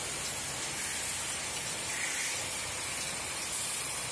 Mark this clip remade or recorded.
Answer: recorded